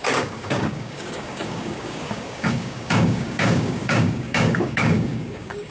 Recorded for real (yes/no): no